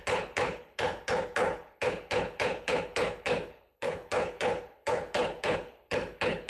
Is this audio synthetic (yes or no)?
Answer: yes